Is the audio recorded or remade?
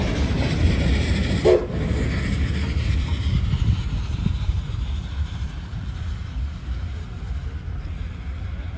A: recorded